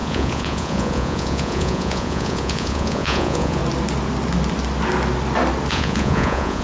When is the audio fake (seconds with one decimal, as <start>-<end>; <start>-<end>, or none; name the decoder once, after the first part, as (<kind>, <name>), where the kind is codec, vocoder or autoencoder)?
0.0-3.6 (vocoder, Vocos); 5.7-6.6